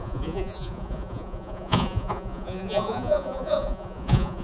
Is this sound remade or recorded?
remade